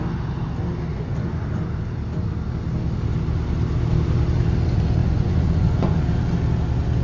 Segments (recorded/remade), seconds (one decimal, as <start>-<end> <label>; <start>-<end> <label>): 0.0-0.9 recorded; 0.9-1.4 remade; 1.4-5.0 recorded; 5.0-6.0 remade; 6.0-7.0 recorded